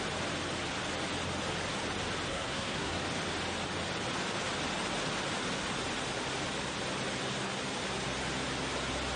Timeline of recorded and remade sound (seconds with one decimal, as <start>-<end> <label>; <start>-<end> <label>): 0.0-2.3 recorded; 2.3-3.0 remade; 3.0-9.2 recorded